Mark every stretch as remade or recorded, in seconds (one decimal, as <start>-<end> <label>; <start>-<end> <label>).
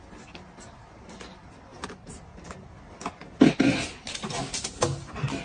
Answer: 0.0-5.4 recorded